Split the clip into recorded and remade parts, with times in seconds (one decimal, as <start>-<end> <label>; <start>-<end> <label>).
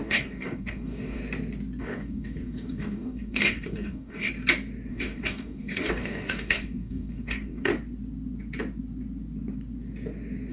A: 0.0-1.2 remade; 1.2-1.8 recorded; 1.8-4.3 remade; 4.3-4.9 recorded; 4.9-7.7 remade; 7.7-10.5 recorded